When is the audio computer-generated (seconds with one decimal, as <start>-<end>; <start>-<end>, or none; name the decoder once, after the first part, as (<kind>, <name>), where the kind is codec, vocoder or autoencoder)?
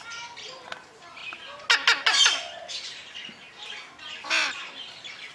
none